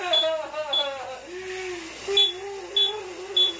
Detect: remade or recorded recorded